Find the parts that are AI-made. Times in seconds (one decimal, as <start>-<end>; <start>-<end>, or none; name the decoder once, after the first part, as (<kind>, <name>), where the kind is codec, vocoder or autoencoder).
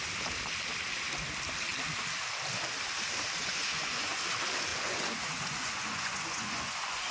3.4-4.2 (vocoder, Vocos); 4.7-7.1